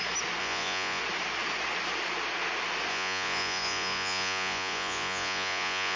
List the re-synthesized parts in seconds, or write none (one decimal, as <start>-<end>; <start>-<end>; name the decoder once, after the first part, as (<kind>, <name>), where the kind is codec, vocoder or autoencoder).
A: 0.4-1.0 (vocoder, Vocos); 2.9-6.0